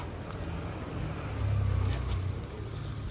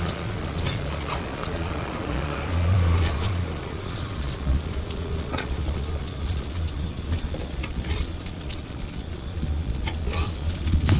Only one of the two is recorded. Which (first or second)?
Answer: first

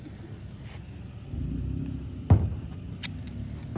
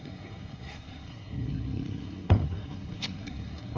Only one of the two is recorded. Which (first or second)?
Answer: first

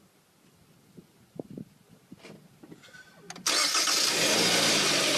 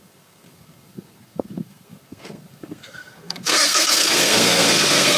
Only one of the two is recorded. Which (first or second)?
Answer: first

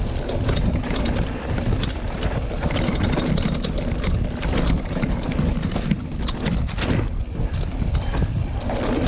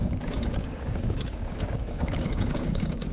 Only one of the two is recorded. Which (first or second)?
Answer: first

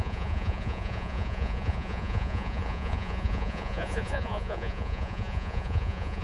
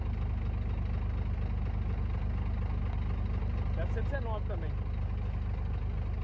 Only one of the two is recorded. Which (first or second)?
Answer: second